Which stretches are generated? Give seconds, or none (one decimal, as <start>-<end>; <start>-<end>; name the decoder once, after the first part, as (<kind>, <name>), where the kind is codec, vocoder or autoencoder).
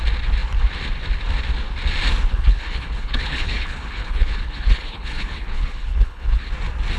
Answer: 2.3-6.5 (codec, HILCodec)